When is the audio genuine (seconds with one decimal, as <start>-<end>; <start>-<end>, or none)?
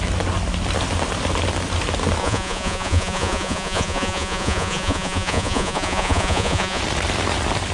0.0-2.2; 6.8-7.7